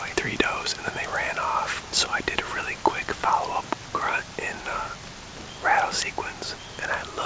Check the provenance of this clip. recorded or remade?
recorded